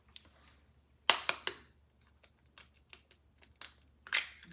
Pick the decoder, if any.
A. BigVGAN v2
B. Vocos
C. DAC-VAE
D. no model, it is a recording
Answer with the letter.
D